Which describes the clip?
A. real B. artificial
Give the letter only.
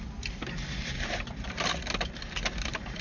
A